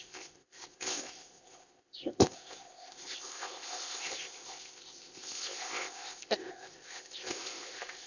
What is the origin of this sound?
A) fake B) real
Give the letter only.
A